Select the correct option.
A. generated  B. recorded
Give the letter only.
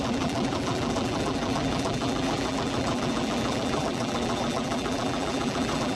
A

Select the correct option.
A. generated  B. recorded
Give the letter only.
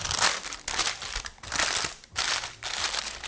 A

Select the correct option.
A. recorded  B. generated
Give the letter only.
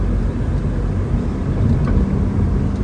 A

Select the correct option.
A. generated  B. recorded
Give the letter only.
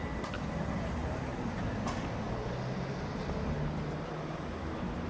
B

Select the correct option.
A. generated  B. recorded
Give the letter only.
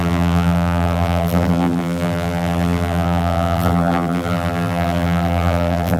A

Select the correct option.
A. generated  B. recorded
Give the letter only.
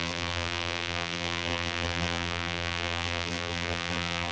A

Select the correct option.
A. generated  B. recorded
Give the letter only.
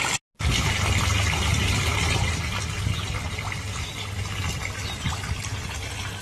B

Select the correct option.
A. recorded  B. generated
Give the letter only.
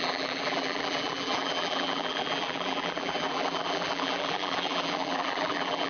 B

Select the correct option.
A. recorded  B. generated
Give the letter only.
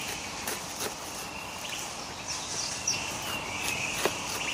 A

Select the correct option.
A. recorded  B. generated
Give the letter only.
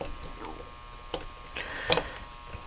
A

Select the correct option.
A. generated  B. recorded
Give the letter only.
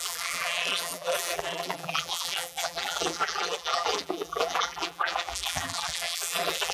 A